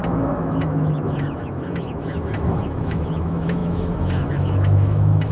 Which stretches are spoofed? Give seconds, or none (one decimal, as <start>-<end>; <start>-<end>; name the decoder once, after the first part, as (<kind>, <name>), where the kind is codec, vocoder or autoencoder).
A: 0.0-5.3 (autoencoder, DAC-VAE)